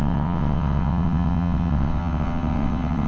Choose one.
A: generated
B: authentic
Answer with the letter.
A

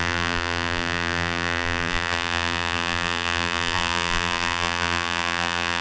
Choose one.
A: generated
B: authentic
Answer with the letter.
A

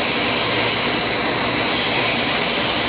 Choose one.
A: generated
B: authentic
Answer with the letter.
B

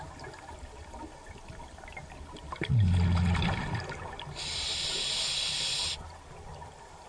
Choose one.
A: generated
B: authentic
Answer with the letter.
B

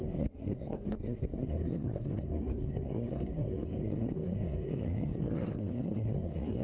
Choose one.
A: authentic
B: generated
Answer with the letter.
B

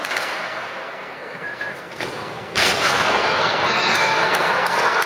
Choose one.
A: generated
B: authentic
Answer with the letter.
A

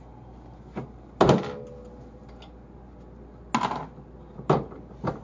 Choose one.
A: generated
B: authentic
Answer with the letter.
B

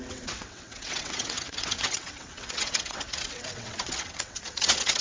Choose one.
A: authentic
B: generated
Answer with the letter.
B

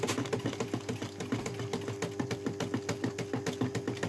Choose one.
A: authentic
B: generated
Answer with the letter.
A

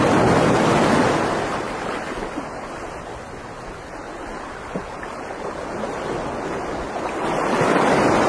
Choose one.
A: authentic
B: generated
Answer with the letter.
A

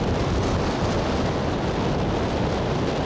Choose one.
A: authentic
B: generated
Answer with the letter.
A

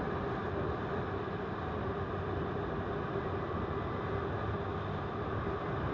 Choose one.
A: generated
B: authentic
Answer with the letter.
B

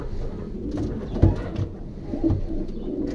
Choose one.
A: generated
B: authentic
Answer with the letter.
B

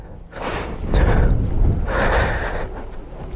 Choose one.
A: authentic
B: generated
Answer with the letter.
A